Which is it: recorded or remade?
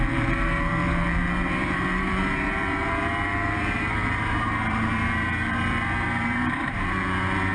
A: remade